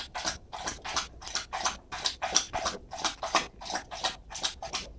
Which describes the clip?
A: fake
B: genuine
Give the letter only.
B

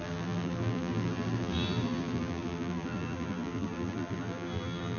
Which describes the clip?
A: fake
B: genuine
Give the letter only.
A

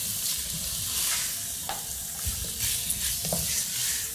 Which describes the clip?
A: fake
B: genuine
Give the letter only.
A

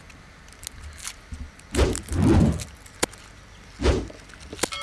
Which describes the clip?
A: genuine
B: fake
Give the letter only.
A